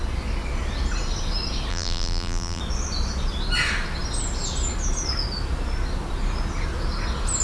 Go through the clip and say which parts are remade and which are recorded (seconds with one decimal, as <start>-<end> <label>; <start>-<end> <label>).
0.0-1.7 recorded; 1.7-2.6 remade; 2.6-7.4 recorded